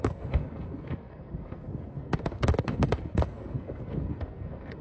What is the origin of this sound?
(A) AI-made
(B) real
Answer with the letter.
A